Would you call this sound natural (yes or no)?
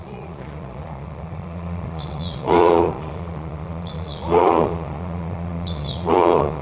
no